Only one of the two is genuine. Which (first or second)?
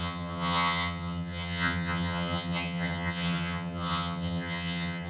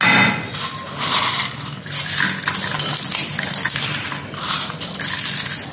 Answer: second